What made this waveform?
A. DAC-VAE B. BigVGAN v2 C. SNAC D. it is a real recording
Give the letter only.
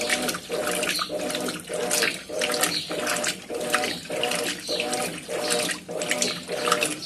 D